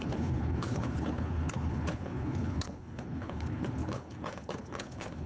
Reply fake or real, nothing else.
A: fake